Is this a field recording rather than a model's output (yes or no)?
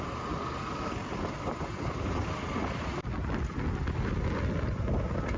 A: yes